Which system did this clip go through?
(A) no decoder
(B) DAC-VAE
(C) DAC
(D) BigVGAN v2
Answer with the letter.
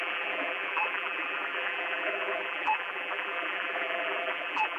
D